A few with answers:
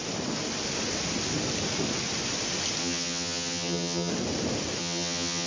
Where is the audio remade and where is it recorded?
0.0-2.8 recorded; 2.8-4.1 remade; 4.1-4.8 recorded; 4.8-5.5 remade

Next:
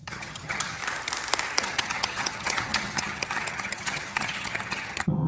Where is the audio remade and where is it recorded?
0.0-0.8 remade; 0.8-1.6 recorded; 1.6-5.3 remade

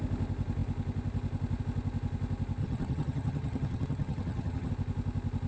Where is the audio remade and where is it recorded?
0.0-2.6 recorded; 2.6-4.7 remade; 4.7-5.5 recorded

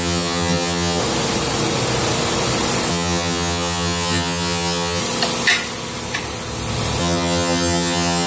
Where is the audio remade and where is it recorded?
0.0-1.0 remade; 1.0-2.9 recorded; 2.9-5.0 remade; 5.0-7.0 recorded; 7.0-8.3 remade

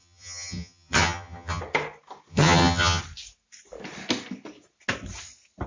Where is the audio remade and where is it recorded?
0.0-1.6 remade; 1.6-2.3 recorded; 2.3-3.0 remade; 3.0-5.7 recorded

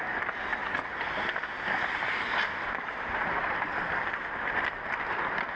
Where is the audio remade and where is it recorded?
0.0-5.6 recorded